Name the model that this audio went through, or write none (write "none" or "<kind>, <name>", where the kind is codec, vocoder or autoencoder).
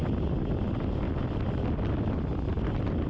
none